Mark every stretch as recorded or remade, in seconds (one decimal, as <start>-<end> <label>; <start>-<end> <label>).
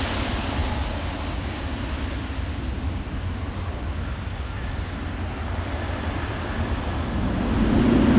0.0-8.2 recorded